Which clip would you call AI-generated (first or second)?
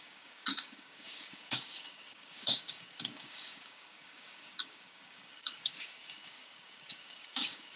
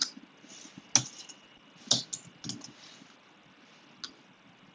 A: first